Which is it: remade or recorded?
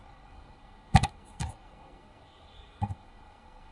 remade